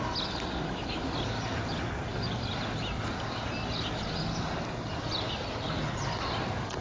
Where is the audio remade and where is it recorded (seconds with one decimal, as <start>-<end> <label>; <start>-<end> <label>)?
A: 0.0-6.8 recorded